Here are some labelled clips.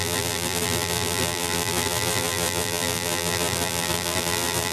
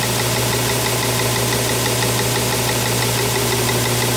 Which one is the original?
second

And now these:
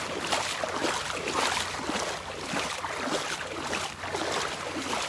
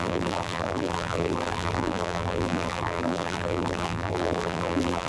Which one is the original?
first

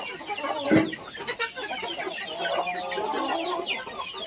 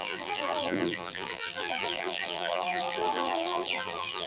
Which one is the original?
first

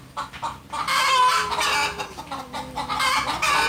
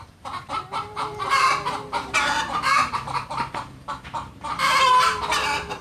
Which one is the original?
first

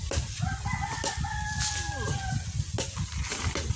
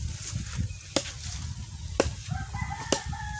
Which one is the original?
second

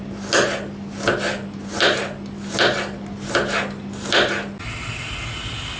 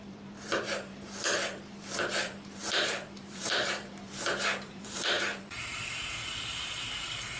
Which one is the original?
first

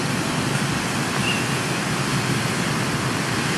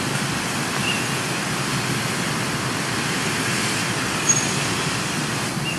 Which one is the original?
first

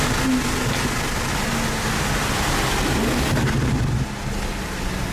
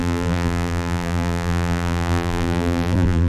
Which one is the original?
first